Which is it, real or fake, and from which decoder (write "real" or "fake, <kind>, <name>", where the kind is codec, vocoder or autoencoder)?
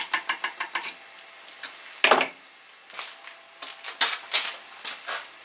real